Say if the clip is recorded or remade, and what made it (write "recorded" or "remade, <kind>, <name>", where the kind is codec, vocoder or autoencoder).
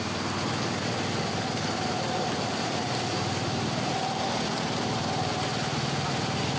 recorded